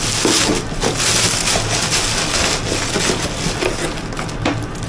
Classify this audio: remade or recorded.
recorded